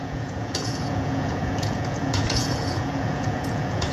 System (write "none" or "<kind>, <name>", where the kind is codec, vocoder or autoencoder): vocoder, Vocos